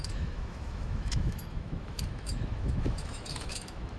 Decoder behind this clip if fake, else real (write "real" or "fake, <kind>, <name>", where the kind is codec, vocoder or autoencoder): fake, autoencoder, DAC-VAE